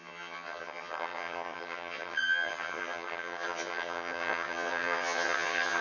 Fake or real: fake